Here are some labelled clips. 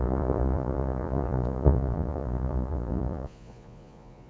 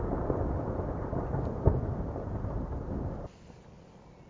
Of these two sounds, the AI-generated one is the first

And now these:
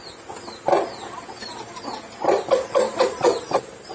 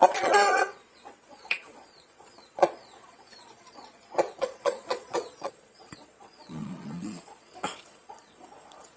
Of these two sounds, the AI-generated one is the second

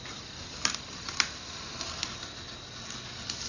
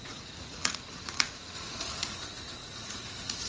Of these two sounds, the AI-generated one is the second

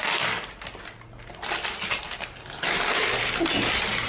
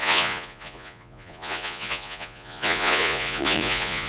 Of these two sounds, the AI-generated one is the second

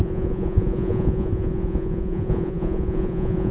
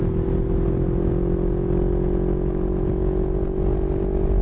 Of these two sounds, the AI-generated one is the first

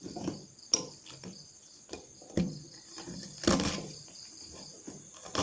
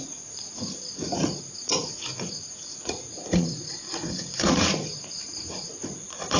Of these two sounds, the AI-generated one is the second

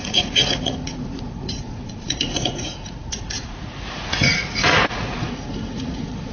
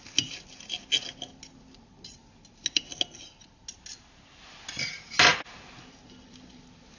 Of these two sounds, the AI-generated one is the first